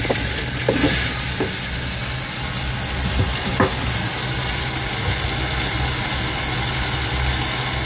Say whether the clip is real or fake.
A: real